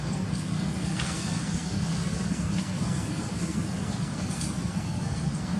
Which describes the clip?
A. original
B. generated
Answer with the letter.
B